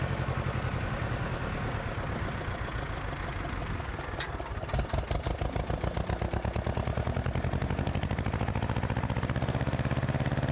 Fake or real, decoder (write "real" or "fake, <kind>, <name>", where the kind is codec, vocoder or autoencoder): real